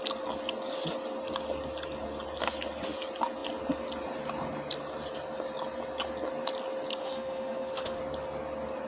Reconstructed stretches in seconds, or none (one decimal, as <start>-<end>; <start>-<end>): 7.0-8.0